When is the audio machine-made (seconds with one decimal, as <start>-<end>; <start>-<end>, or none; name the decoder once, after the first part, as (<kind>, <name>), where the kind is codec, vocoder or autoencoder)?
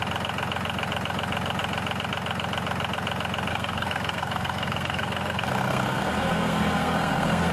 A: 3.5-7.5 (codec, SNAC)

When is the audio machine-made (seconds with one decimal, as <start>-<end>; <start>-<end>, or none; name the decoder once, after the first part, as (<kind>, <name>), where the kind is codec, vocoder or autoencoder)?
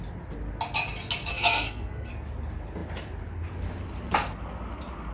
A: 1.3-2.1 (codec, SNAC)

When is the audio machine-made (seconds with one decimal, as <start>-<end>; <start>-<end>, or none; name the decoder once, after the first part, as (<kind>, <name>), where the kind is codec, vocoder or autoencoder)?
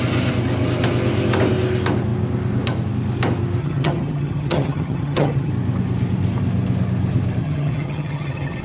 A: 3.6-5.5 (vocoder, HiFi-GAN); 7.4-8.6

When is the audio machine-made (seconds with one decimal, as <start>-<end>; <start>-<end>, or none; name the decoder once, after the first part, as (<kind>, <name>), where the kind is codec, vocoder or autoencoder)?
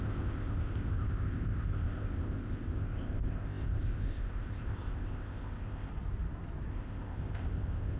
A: 0.0-5.9 (codec, ZipCodec); 6.7-8.0